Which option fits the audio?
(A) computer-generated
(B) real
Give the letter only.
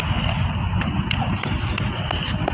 B